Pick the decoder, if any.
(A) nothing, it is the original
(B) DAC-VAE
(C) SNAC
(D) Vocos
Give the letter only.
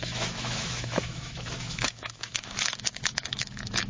B